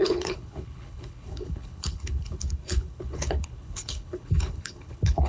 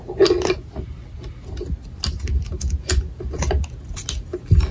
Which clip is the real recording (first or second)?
second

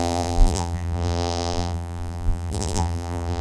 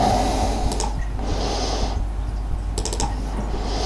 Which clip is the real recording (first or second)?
second